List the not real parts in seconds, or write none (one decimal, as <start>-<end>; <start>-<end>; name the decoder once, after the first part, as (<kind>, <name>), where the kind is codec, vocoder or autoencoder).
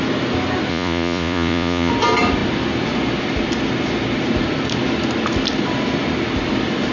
0.7-1.9 (vocoder, Vocos)